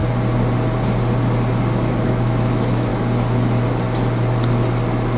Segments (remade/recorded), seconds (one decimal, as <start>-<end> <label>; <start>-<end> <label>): 0.0-2.0 recorded; 2.0-2.9 remade; 2.9-5.2 recorded